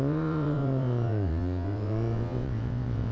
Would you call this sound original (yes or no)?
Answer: no